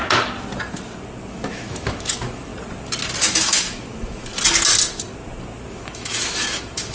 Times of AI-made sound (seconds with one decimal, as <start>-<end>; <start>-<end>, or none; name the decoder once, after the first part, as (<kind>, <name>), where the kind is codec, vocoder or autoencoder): 1.3-2.5 (autoencoder, DAC-VAE); 3.2-4.3; 5.7-6.9